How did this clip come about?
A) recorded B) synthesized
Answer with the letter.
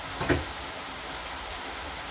A